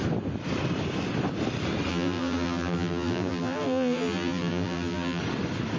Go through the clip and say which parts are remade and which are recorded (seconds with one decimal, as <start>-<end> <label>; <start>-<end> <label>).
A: 0.0-1.9 recorded; 1.9-5.2 remade; 5.2-5.8 recorded